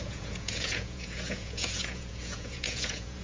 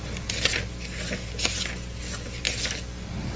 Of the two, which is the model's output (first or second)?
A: first